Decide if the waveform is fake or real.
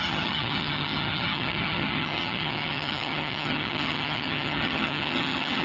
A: fake